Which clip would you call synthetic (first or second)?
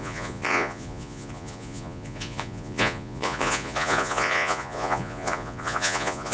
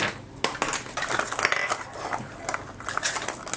first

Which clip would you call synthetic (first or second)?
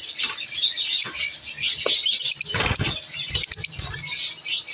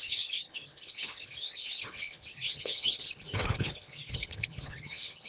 second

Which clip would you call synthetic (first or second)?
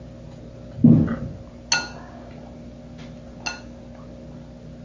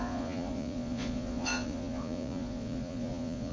second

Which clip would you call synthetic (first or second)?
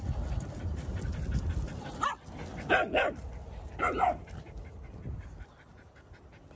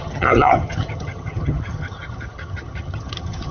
second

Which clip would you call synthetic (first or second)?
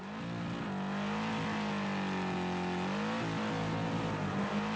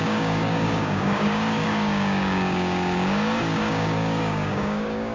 second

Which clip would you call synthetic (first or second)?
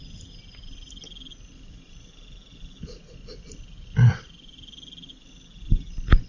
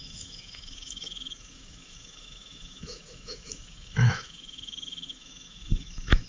second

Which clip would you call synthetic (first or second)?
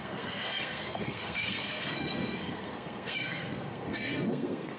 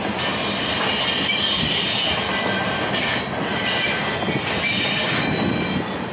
first